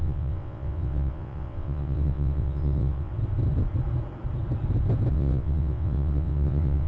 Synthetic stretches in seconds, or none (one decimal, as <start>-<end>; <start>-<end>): 0.0-3.1; 5.1-6.9